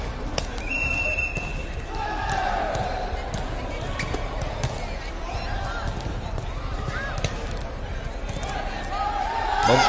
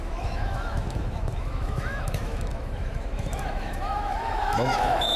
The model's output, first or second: second